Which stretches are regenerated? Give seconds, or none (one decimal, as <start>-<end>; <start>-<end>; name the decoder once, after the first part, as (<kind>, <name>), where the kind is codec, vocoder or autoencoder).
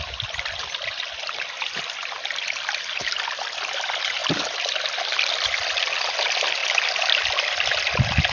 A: none